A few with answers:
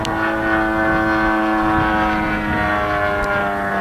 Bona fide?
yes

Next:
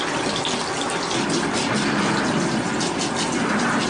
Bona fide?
yes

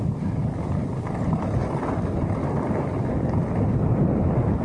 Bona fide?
yes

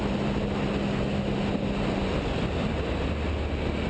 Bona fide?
yes